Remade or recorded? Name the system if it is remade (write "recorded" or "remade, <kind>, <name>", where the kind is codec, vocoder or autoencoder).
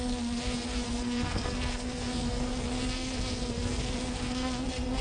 remade, codec, SNAC